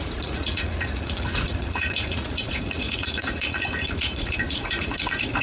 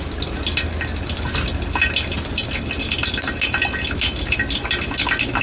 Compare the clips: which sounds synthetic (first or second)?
first